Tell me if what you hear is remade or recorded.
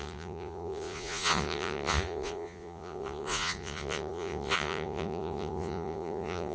remade